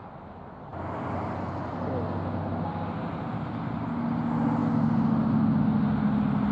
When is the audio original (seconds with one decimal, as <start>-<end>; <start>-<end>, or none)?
0.0-6.5